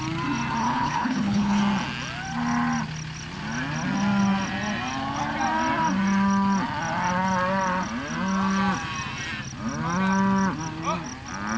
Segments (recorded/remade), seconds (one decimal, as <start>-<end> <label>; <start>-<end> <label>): 0.0-0.6 recorded; 0.6-1.6 remade; 1.6-11.6 recorded